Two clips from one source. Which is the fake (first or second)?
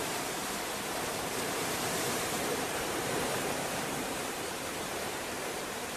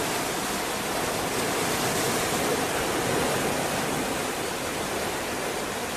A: first